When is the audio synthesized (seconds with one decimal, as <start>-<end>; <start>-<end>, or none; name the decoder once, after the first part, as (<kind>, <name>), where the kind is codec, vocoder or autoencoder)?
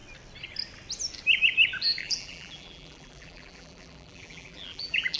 2.0-5.2 (vocoder, BigVGAN v2)